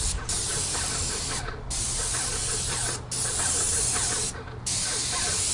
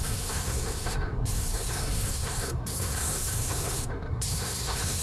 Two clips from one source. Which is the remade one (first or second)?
second